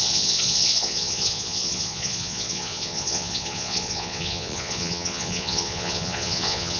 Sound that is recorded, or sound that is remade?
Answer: remade